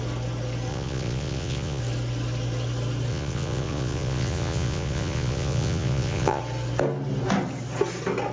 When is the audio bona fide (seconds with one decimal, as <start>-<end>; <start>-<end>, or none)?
0.0-0.7; 1.8-3.1; 6.4-8.3

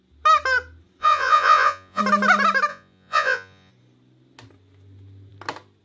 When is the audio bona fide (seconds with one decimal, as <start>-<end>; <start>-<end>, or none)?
0.0-1.0; 2.0-2.7; 3.7-5.8

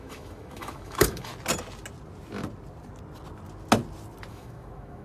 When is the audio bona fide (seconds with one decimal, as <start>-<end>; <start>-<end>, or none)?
1.3-4.3

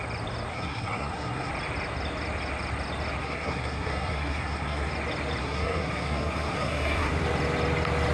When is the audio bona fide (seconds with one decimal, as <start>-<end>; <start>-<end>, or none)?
0.0-0.5; 1.5-3.2; 4.9-5.4; 7.1-8.1

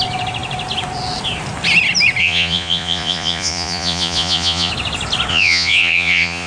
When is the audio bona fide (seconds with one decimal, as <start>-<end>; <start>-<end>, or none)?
0.0-2.2; 4.7-5.3

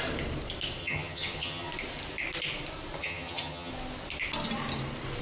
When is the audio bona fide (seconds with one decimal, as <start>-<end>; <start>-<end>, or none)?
0.0-0.8; 1.7-3.0; 3.7-5.2